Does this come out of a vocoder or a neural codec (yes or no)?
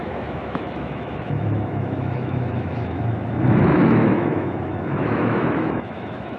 yes